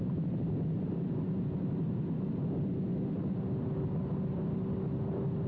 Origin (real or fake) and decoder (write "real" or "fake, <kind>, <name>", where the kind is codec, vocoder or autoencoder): real